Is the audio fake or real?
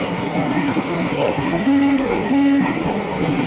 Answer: fake